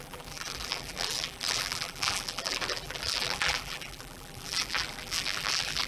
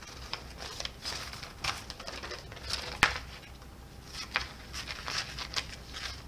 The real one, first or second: second